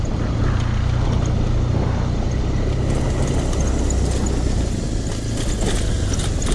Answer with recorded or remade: recorded